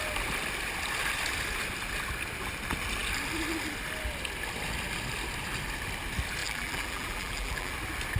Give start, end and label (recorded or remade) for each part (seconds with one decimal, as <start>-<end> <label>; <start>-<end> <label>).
0.0-6.4 recorded; 6.4-7.7 remade; 7.7-8.2 recorded